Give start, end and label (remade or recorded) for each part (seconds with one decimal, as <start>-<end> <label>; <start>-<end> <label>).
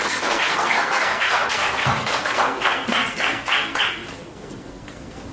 0.0-5.3 remade